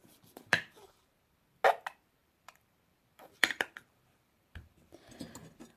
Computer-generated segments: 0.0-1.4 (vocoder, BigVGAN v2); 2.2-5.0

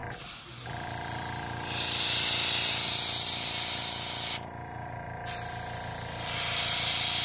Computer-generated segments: none

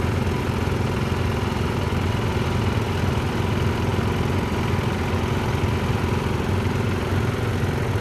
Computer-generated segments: none

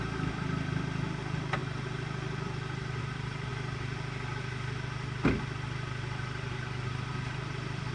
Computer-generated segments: 0.0-1.6 (vocoder, BigVGAN v2); 3.0-3.5

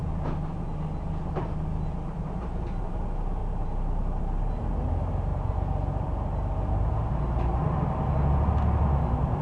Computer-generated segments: 0.0-3.0 (vocoder, BigVGAN v2); 3.4-4.2; 5.3-7.0

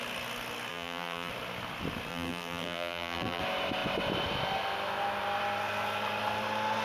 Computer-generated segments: 0.7-1.3 (vocoder, BigVGAN v2); 2.1-3.4

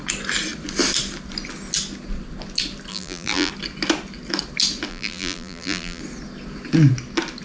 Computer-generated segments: 2.9-3.5 (vocoder, BigVGAN v2); 4.9-6.0

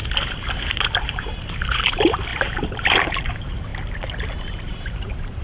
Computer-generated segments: 1.0-3.7 (vocoder, BigVGAN v2); 4.4-5.4